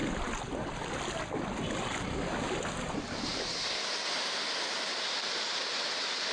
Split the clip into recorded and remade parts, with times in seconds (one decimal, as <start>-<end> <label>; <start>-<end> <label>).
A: 0.0-6.3 recorded